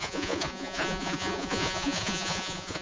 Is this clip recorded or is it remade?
remade